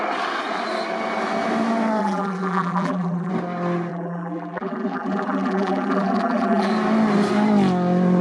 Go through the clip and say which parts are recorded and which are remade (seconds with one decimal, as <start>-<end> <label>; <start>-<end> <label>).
0.0-2.0 recorded; 2.0-3.3 remade; 3.3-3.9 recorded; 3.9-6.7 remade; 6.7-8.2 recorded